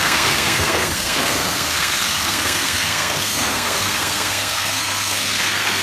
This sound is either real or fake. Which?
fake